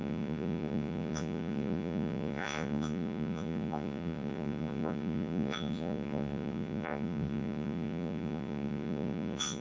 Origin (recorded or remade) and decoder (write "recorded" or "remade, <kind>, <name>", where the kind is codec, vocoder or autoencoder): remade, vocoder, Vocos